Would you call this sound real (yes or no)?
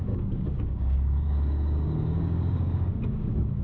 no